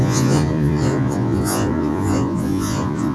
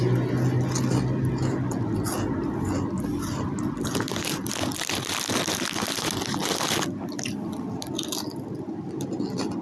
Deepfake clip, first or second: first